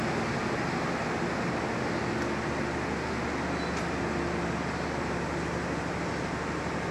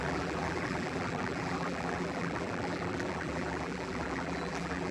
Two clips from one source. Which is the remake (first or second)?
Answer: second